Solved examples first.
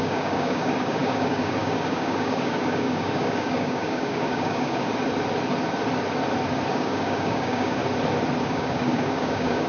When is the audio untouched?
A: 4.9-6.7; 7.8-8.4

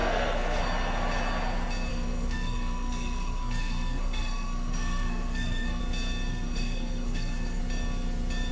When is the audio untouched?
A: 0.6-1.9; 5.8-6.3; 7.6-8.5

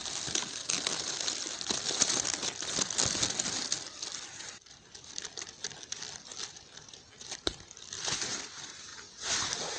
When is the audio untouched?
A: 0.0-9.8

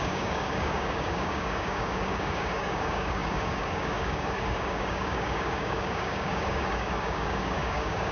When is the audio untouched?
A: none

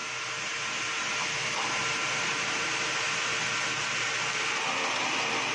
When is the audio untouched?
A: 3.3-5.5

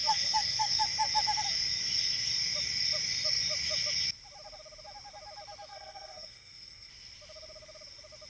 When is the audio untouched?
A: 0.8-5.7; 6.9-8.3

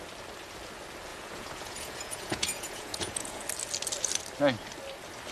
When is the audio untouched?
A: 0.0-1.1; 3.4-5.3

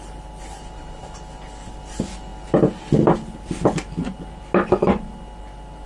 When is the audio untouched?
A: 0.0-5.9